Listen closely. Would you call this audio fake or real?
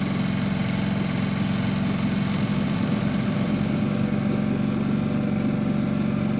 real